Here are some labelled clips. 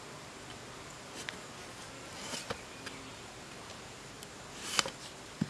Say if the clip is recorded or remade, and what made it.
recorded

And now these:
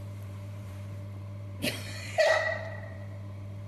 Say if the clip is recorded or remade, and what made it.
remade, vocoder, BigVGAN v2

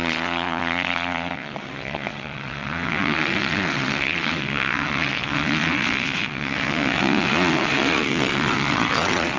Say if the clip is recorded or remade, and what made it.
remade, vocoder, WaveNeXt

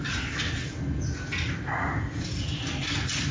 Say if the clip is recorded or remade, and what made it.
recorded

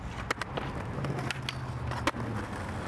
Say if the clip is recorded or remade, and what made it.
recorded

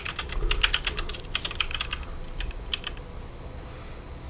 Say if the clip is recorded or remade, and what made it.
recorded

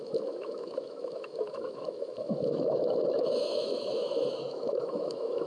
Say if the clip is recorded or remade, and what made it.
remade, autoencoder, DAC-VAE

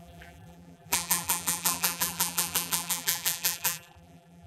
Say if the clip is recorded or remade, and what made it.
remade, vocoder, BigVGAN v2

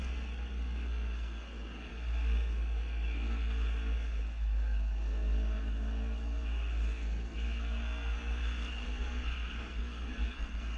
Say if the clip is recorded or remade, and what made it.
remade, codec, SNAC